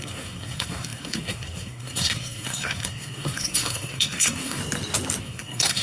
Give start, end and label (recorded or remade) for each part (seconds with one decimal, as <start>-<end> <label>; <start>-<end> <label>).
0.0-4.6 remade; 4.6-5.2 recorded; 5.2-5.8 remade